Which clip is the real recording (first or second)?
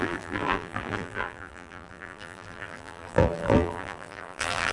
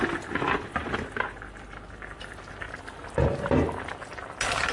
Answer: second